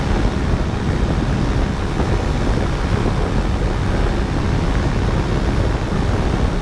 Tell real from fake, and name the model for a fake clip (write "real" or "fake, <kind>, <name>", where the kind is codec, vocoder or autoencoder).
real